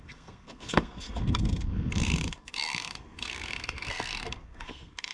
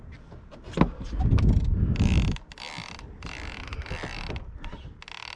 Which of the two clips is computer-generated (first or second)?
first